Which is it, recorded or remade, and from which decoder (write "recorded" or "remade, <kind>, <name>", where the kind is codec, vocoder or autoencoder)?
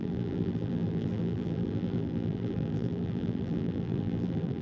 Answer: remade, vocoder, BigVGAN v2